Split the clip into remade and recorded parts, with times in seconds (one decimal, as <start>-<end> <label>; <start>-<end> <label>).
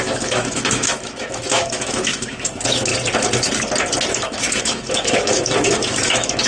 0.0-2.9 remade; 2.9-4.2 recorded; 4.2-6.5 remade